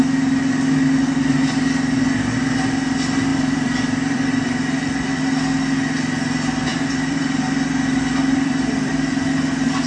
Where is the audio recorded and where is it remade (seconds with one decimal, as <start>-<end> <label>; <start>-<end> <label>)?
0.0-3.3 recorded; 3.3-5.2 remade; 5.2-6.7 recorded; 6.7-8.9 remade; 8.9-9.9 recorded